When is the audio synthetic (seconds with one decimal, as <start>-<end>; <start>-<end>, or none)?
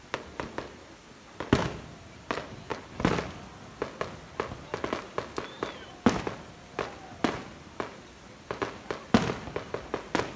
none